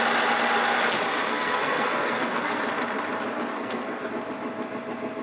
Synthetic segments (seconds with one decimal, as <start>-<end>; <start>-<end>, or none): 1.3-2.6; 3.5-4.1